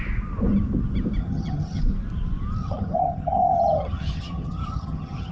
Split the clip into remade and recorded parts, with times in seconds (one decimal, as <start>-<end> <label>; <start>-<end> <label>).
0.0-1.2 recorded; 1.2-1.8 remade; 1.8-2.6 recorded; 2.6-5.3 remade